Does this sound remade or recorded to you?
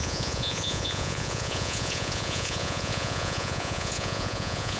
remade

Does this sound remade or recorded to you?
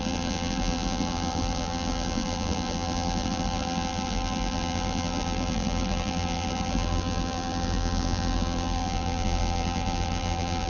remade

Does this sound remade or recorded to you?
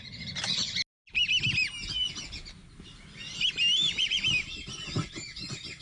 recorded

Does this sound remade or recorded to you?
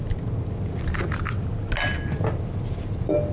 recorded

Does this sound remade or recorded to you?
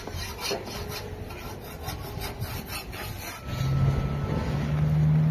recorded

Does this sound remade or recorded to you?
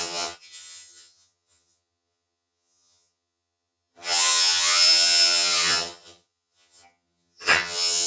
remade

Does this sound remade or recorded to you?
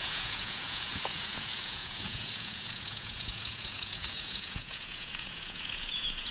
remade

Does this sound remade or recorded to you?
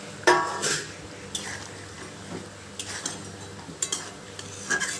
recorded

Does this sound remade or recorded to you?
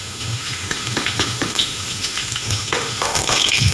remade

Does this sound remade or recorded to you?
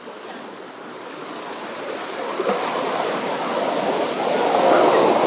recorded